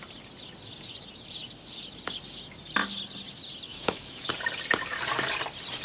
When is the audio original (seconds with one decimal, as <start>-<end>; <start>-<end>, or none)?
0.0-3.7; 4.3-5.8